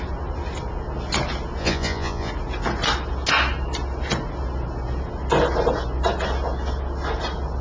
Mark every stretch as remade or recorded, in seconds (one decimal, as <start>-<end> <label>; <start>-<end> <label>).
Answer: 0.0-1.6 recorded; 1.6-2.3 remade; 2.3-7.6 recorded